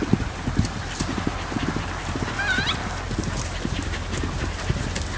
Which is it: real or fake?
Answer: real